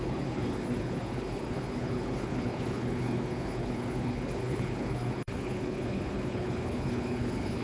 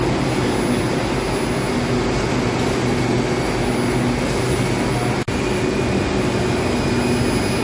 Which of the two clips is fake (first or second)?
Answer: first